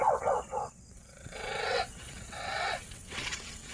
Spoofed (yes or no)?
yes